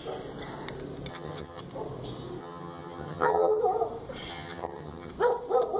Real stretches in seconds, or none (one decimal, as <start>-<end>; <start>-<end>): 0.0-1.1; 1.6-2.4; 3.6-4.3; 5.1-5.8